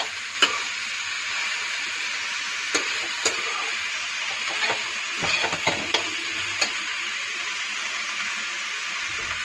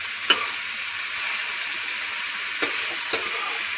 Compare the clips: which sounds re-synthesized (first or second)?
first